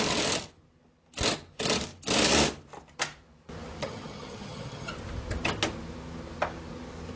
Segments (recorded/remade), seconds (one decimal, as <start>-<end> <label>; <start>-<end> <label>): 0.0-3.8 recorded; 3.8-4.9 remade; 4.9-7.2 recorded